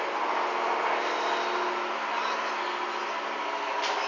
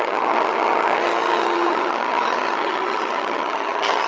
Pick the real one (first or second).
first